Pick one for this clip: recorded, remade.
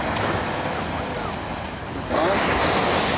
recorded